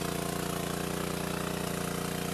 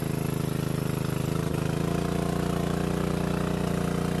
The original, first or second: first